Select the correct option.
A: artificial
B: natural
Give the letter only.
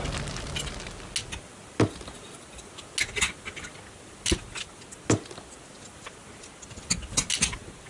B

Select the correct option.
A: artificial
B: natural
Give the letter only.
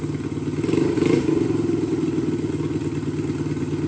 B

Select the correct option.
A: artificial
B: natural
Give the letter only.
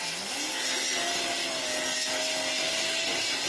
B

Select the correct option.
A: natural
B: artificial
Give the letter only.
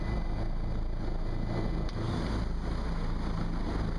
A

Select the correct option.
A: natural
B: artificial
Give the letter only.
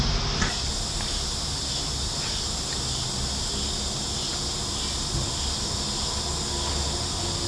A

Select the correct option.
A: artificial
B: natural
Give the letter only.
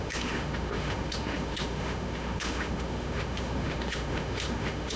A